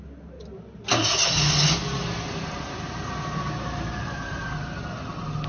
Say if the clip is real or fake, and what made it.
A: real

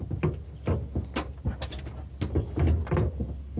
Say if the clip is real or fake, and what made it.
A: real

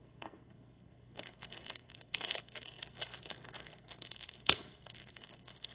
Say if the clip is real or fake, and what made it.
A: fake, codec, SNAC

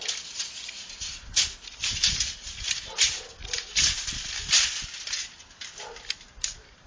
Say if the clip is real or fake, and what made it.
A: real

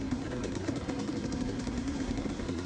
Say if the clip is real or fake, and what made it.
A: fake, codec, SNAC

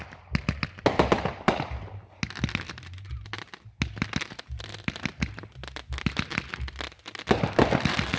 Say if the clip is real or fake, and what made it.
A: real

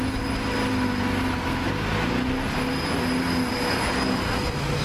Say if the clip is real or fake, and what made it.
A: real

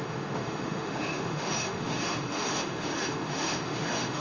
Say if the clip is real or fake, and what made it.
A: fake, autoencoder, DAC-VAE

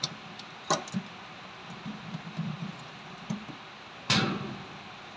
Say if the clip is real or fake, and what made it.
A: real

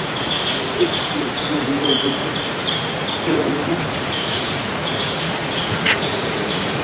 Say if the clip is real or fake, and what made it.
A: fake, vocoder, Vocos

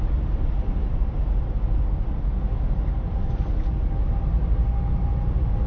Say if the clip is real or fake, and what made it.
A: real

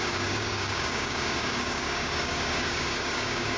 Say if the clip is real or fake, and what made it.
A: fake, codec, DAC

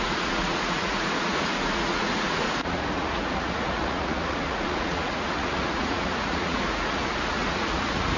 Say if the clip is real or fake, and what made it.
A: fake, vocoder, Vocos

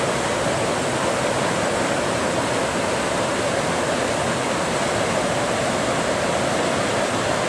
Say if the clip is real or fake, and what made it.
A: real